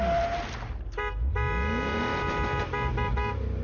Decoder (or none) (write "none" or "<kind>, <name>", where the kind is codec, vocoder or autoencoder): none